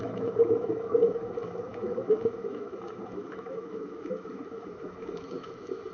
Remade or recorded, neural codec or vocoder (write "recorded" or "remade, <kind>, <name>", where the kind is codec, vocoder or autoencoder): remade, autoencoder, DAC-VAE